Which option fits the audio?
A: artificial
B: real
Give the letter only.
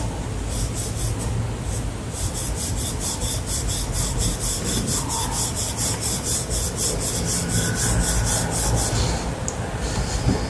B